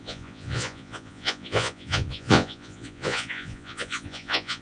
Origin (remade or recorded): remade